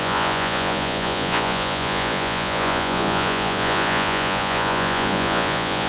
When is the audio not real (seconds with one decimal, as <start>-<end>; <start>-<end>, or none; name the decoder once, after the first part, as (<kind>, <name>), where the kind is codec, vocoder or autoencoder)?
0.0-5.9 (vocoder, Vocos)